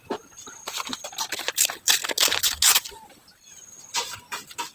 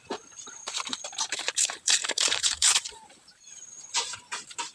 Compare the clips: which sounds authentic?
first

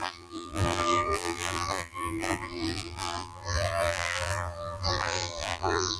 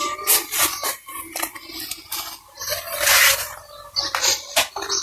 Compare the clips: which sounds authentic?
second